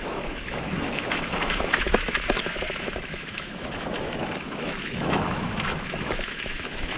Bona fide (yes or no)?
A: no